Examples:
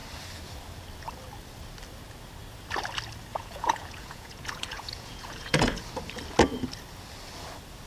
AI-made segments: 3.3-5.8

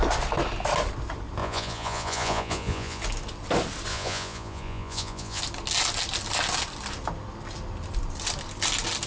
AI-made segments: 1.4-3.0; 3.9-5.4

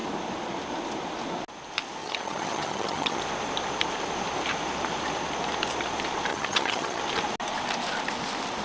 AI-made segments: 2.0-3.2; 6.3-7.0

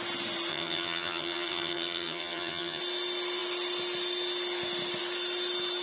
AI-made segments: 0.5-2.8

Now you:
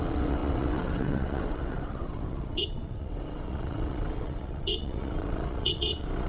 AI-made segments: 0.0-6.3

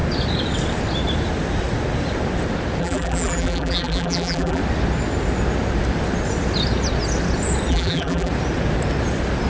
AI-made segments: 2.8-4.6; 7.7-8.3

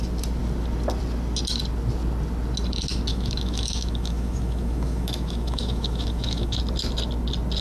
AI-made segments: 3.1-6.6